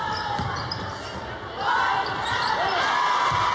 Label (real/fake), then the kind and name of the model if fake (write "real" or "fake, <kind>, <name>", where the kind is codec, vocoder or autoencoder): real